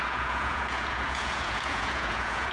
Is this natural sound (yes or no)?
no